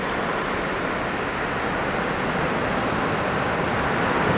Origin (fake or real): real